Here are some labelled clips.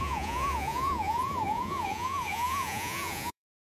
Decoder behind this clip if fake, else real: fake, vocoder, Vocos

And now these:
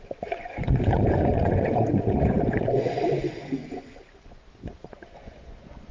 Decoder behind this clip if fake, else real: fake, vocoder, Vocos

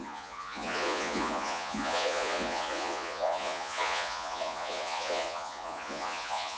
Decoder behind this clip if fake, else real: fake, vocoder, Vocos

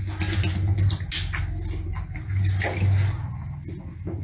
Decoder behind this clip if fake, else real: real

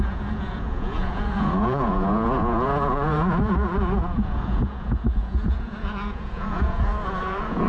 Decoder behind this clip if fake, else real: fake, vocoder, Vocos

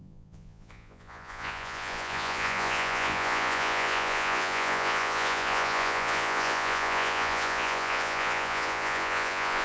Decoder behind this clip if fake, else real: fake, vocoder, Vocos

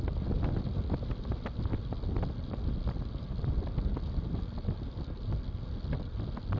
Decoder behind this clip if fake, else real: real